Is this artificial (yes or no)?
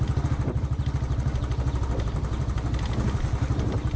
no